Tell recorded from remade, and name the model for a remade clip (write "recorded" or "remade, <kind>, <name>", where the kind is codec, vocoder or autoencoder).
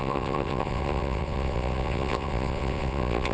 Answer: remade, vocoder, WaveNeXt